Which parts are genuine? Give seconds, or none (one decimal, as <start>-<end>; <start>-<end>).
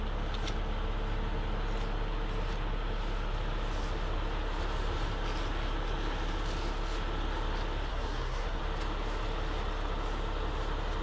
0.0-7.9; 8.6-11.0